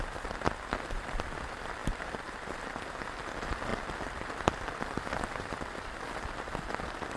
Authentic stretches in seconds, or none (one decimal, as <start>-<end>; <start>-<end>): 0.0-1.8; 2.4-3.7; 6.1-7.2